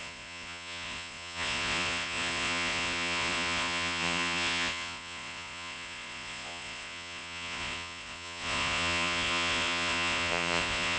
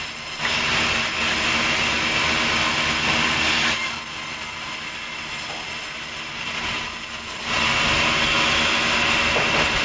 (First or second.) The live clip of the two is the second